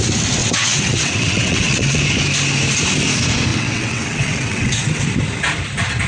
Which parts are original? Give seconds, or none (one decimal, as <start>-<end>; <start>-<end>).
0.0-0.4; 2.0-3.5; 5.0-6.1